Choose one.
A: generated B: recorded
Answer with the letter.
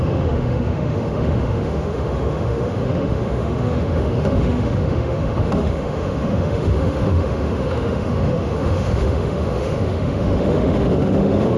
A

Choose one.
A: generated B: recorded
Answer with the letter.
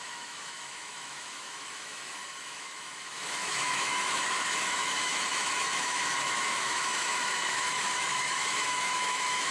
A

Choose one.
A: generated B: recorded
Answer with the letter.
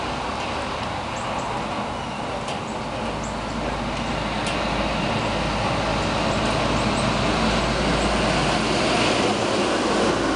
B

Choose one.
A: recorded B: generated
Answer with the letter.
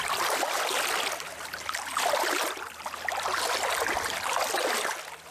A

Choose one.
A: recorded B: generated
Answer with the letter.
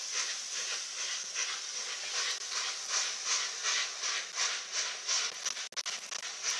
A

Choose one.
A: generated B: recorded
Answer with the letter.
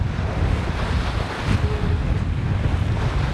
B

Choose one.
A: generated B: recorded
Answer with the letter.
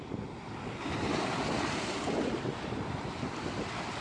B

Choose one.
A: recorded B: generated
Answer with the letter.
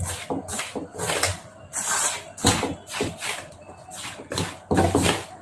A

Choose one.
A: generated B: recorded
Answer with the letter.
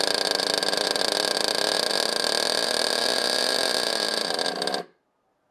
B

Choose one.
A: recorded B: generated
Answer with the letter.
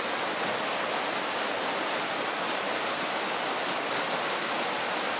A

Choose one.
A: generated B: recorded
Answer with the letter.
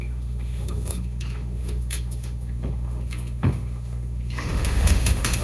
A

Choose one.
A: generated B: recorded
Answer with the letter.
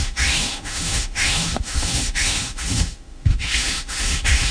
A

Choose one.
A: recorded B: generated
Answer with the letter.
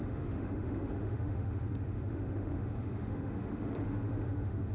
B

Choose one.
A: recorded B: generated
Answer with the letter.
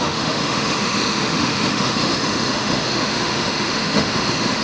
B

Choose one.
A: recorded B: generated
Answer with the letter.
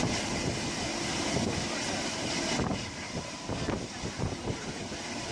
A